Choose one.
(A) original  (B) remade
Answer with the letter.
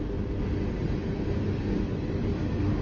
A